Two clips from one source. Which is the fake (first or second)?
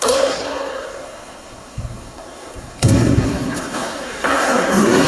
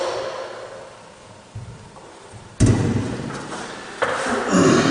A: first